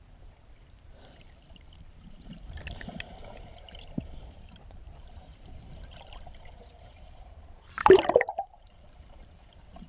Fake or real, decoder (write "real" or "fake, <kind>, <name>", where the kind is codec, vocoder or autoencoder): fake, vocoder, BigVGAN v2